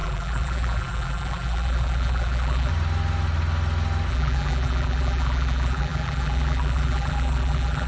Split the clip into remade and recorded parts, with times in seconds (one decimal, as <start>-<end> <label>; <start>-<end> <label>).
0.0-2.7 remade; 2.7-4.1 recorded; 4.1-7.9 remade